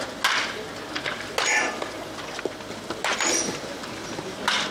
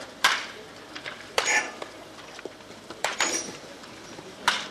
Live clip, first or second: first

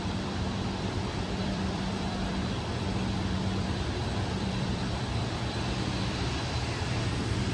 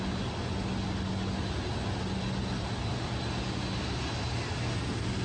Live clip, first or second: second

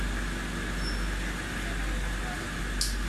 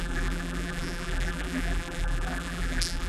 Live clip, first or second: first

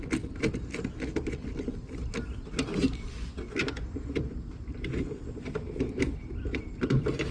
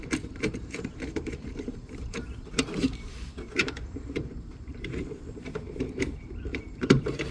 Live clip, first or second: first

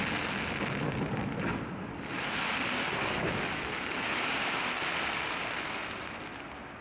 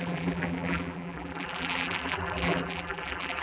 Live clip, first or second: first